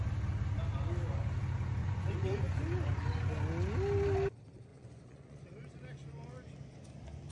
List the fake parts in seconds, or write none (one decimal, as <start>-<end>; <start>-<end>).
1.8-2.6; 4.7-5.4